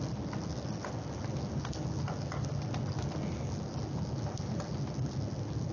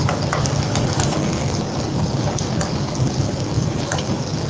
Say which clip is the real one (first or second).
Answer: first